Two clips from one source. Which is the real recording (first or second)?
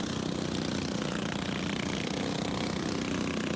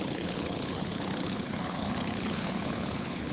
first